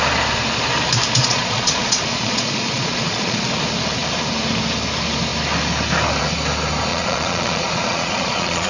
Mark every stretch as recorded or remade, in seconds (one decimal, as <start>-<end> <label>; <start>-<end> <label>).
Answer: 0.0-1.2 recorded; 1.2-3.5 remade; 3.5-6.9 recorded; 6.9-8.7 remade